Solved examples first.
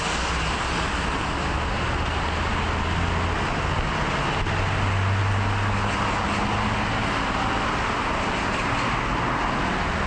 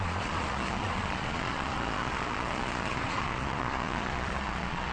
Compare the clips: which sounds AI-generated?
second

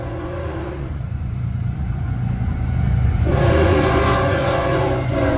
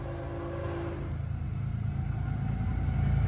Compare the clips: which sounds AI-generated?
first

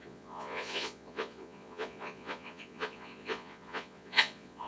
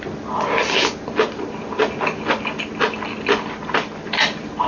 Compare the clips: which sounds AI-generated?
first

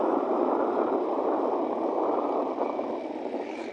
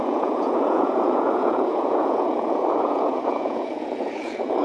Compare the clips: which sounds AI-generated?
second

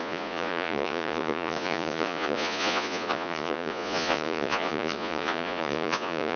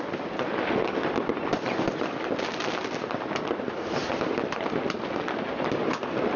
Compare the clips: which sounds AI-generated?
first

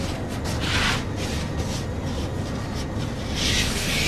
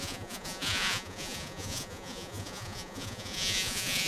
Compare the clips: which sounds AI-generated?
second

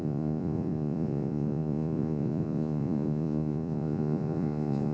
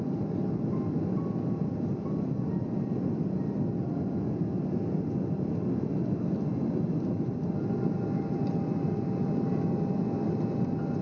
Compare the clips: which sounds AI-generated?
first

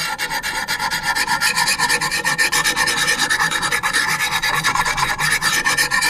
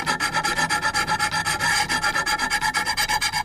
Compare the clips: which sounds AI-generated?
first